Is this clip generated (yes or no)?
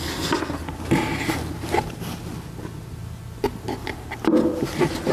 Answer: no